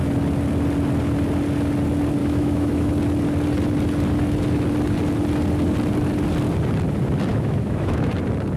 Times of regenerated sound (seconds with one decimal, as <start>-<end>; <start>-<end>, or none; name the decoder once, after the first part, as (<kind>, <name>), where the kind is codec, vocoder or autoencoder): 2.2-2.9 (autoencoder, DAC-VAE); 7.3-8.1